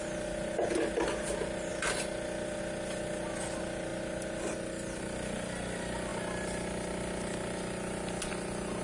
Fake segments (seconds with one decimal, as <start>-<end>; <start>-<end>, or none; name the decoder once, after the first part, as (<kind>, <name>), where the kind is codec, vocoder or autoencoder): none